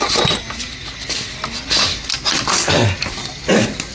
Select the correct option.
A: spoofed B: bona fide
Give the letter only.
B